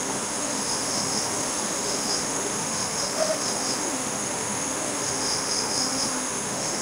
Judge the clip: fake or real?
fake